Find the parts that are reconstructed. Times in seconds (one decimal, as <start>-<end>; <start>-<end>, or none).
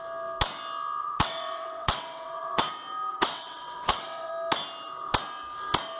1.0-2.7; 3.1-4.3